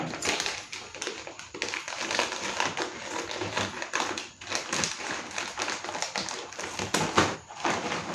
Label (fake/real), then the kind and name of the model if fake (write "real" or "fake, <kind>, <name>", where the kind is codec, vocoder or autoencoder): real